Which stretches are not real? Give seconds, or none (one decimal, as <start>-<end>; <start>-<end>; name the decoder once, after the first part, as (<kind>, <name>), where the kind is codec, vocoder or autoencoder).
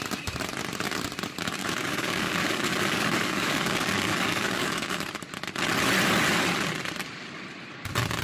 1.6-5.1 (codec, DAC)